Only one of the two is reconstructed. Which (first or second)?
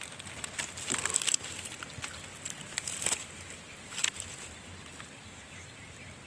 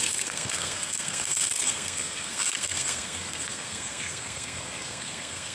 second